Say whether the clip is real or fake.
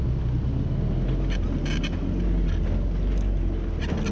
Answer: real